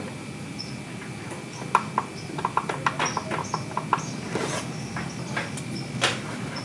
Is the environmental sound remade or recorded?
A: recorded